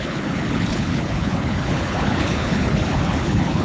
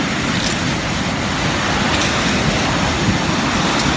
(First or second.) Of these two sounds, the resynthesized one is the first